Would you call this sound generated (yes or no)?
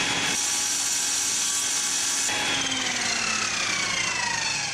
no